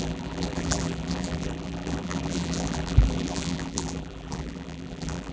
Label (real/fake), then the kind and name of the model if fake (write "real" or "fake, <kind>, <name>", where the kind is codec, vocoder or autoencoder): fake, vocoder, BigVGAN v2